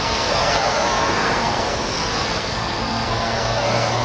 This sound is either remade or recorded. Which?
remade